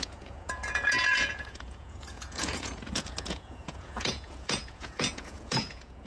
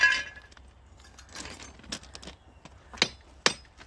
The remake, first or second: first